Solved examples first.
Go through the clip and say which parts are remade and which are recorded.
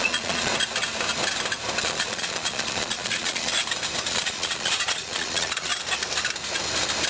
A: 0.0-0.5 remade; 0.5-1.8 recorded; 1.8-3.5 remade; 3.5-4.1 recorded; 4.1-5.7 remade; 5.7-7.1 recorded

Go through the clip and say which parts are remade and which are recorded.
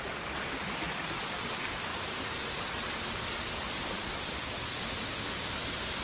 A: 0.0-6.0 recorded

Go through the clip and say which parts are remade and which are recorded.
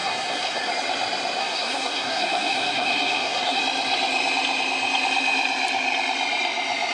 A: 0.0-0.7 remade; 0.7-1.4 recorded; 1.4-3.6 remade; 3.6-6.9 recorded